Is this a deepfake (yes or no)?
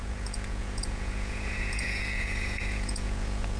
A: yes